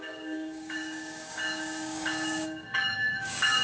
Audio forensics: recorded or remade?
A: remade